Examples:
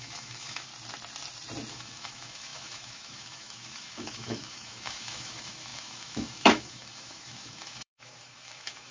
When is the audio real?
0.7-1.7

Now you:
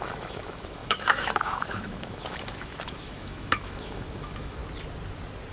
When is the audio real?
4.6-5.5

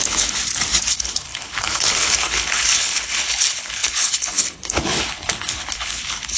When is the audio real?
0.4-0.9

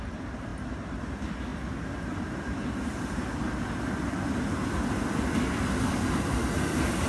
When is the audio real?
0.0-0.5; 1.0-7.1

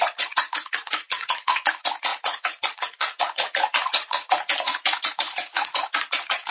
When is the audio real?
none

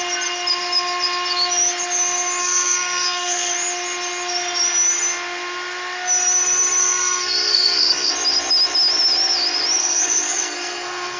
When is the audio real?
0.0-2.4; 3.5-6.8; 8.1-9.8

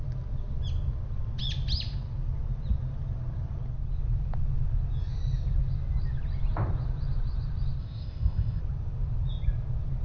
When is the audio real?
0.0-7.8; 8.6-10.0